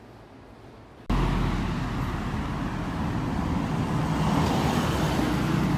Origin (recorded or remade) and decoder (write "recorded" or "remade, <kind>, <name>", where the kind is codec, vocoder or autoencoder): recorded